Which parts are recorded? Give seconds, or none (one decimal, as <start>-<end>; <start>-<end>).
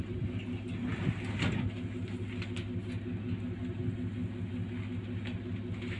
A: 0.0-6.0